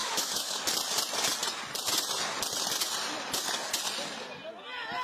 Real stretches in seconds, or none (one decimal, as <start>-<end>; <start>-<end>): 0.7-5.0

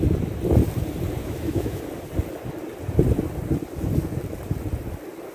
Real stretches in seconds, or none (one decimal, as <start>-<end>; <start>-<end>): 0.0-1.2; 1.8-5.3

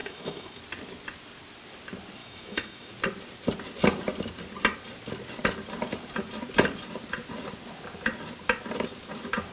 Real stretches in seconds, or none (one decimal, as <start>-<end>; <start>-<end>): 0.6-2.2; 2.9-9.5